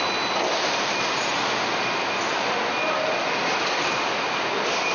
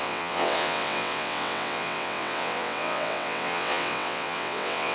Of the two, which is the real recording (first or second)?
first